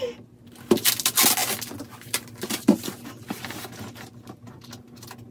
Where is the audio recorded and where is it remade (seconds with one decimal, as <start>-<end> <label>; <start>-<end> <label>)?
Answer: 0.0-5.3 recorded